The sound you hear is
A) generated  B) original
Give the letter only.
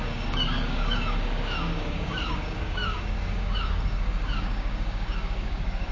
A